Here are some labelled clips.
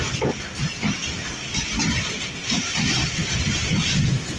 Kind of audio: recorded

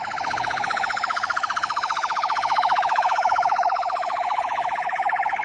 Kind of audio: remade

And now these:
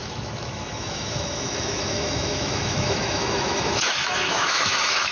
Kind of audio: remade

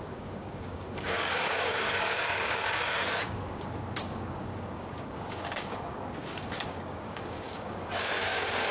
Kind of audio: remade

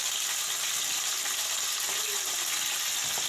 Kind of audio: recorded